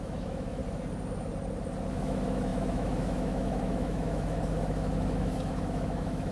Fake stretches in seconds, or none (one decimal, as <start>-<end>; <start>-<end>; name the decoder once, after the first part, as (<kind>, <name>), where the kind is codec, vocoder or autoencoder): 0.0-0.6 (autoencoder, DAC-VAE); 1.9-6.3